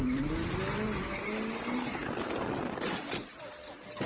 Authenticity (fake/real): real